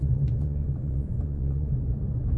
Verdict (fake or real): fake